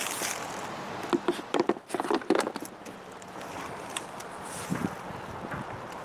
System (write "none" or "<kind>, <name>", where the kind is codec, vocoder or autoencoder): none